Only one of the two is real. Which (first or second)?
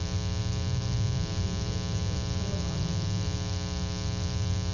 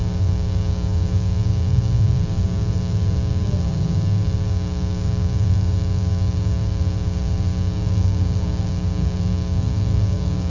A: first